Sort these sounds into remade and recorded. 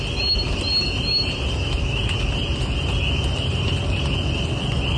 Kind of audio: recorded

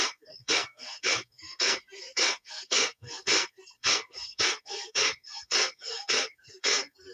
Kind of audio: remade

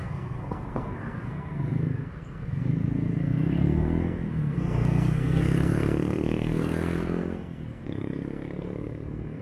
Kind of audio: remade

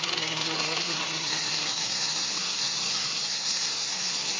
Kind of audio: remade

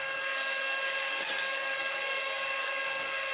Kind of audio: remade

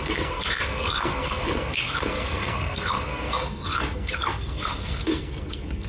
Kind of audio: remade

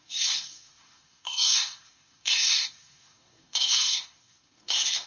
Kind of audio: remade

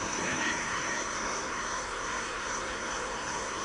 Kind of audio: remade